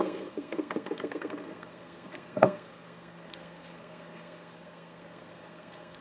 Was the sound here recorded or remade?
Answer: remade